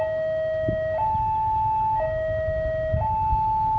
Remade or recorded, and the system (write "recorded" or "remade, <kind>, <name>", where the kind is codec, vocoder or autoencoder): recorded